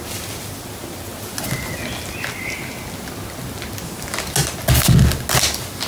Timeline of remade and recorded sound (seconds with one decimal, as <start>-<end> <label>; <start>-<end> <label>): 0.0-5.9 recorded